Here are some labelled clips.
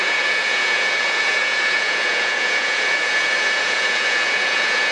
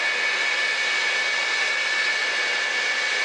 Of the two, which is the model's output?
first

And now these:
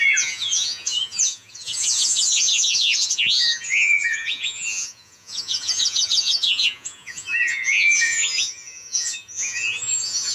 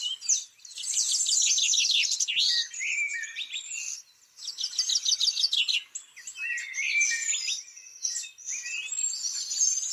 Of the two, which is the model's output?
first